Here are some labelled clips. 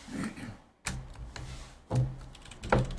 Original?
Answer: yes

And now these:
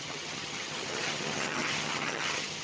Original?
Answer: no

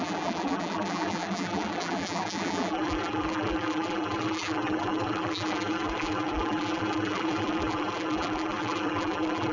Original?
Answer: no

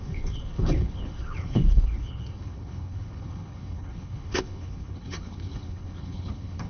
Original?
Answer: no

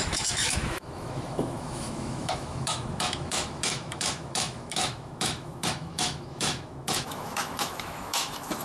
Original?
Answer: no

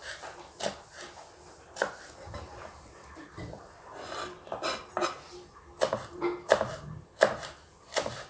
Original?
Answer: yes